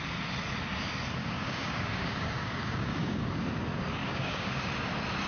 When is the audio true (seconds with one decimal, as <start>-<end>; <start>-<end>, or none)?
0.0-1.2; 3.4-4.0; 4.7-5.3